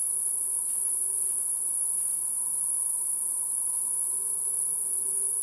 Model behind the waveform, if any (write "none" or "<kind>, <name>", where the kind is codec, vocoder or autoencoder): autoencoder, DAC-VAE